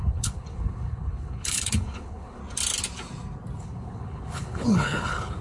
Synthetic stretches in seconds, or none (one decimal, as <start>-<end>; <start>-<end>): 0.0-2.4; 3.6-5.4